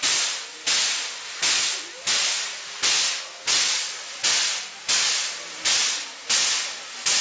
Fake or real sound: real